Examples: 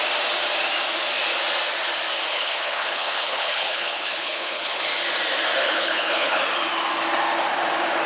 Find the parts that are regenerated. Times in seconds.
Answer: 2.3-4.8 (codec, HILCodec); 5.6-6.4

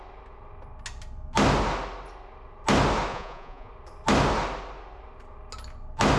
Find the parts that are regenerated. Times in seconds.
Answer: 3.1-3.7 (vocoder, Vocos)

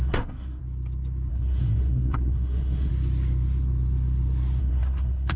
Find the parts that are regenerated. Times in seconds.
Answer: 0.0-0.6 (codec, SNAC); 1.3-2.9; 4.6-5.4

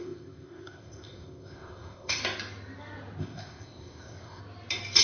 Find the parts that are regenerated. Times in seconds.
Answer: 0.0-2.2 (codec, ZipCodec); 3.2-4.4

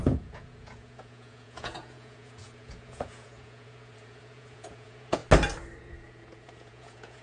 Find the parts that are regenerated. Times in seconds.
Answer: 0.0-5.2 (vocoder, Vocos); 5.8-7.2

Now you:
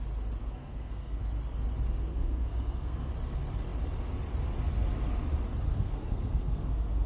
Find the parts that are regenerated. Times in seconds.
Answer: 0.4-1.2 (codec, SNAC); 2.1-3.1; 5.7-7.1

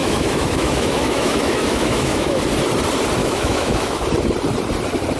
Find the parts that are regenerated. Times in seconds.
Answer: 0.0-2.4 (autoencoder, DAC-VAE); 3.2-4.0